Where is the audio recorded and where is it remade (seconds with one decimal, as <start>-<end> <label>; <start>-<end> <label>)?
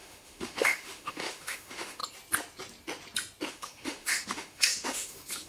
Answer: 0.0-2.0 remade; 2.0-3.5 recorded; 3.5-5.5 remade